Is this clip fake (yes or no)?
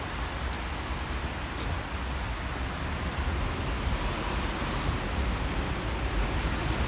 no